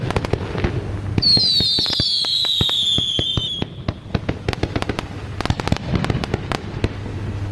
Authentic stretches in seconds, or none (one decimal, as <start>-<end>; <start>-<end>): 0.0-1.3; 1.9-7.5